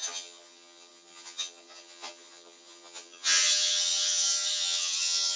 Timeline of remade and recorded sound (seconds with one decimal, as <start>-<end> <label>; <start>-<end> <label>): 0.0-5.4 remade